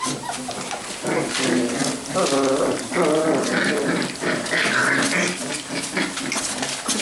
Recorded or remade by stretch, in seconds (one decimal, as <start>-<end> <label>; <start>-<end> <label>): 0.0-1.8 recorded; 1.8-3.9 remade; 3.9-7.0 recorded